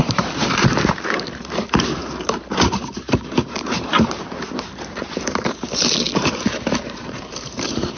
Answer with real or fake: fake